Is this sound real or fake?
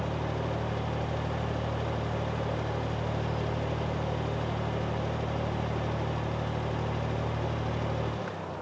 real